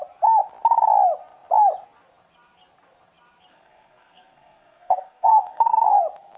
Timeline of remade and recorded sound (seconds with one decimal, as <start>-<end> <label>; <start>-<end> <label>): 0.0-3.5 recorded; 3.5-6.0 remade; 6.0-6.4 recorded